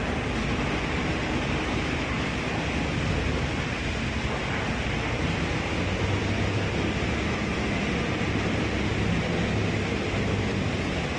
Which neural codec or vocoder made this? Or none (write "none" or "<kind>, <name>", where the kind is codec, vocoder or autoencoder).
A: none